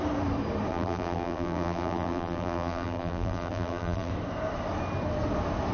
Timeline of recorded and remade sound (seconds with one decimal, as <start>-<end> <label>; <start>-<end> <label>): 0.0-0.7 recorded; 0.7-4.1 remade; 4.1-5.7 recorded